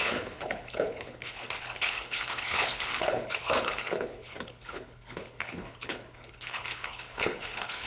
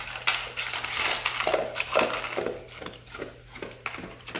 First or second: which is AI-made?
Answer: first